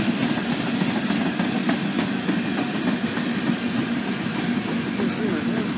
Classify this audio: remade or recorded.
recorded